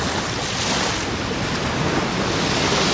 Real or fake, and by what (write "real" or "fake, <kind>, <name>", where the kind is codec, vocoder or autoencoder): real